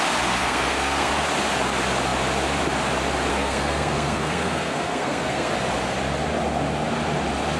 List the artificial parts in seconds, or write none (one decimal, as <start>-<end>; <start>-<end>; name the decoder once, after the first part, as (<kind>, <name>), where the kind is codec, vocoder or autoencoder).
0.4-1.1 (codec, SNAC); 3.3-5.5